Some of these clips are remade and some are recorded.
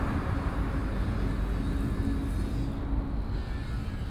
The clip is recorded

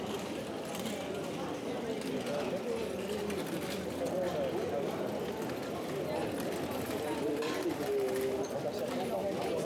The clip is recorded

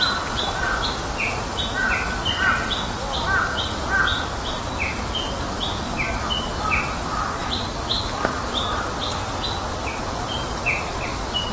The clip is recorded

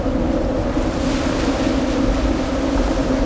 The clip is recorded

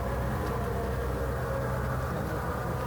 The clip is recorded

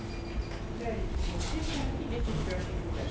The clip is recorded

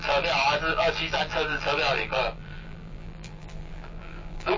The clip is remade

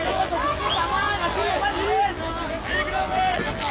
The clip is remade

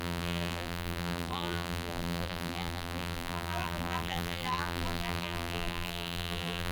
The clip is remade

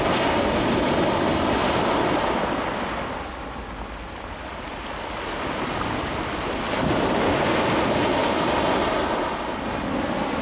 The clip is recorded